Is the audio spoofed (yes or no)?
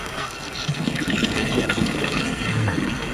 yes